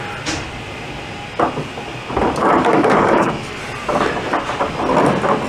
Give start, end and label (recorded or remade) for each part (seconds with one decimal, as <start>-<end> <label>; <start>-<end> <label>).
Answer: 0.0-2.4 recorded; 2.4-3.6 remade; 3.6-5.5 recorded